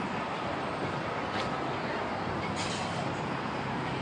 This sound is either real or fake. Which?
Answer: real